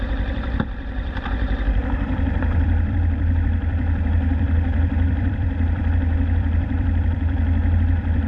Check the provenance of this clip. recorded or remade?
remade